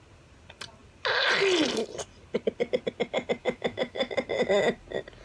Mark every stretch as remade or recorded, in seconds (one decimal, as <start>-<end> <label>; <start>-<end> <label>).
0.0-3.4 recorded; 3.4-4.1 remade; 4.1-5.2 recorded